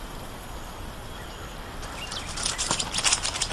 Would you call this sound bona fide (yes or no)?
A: yes